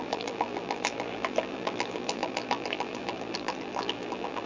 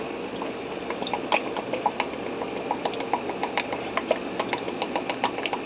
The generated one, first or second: first